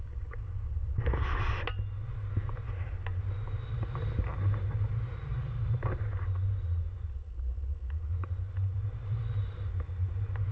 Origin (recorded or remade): recorded